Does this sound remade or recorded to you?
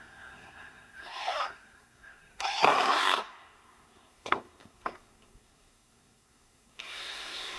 remade